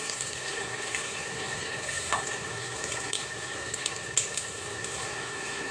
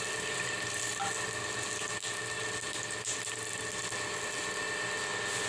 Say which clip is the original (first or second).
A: second